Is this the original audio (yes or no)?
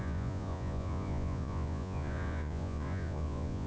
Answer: no